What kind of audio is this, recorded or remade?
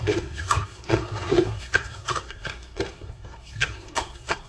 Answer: remade